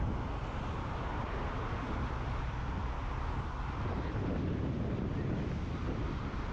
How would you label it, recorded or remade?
recorded